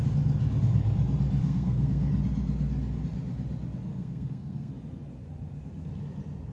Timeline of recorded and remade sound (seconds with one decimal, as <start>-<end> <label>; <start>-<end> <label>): 0.0-1.4 recorded; 1.4-2.1 remade; 2.1-3.9 recorded; 3.9-4.7 remade; 4.7-6.5 recorded